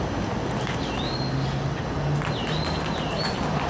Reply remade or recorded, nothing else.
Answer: recorded